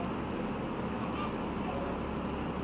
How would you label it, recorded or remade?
recorded